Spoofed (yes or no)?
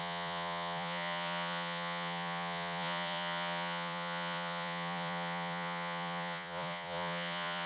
yes